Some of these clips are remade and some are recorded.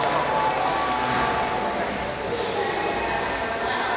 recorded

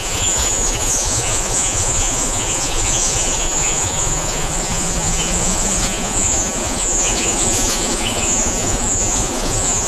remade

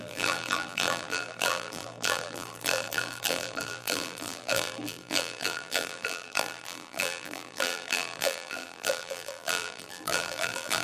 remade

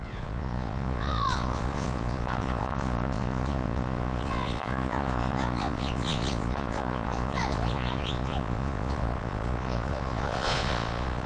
remade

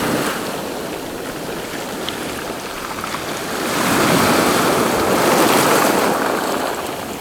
recorded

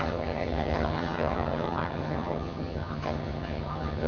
remade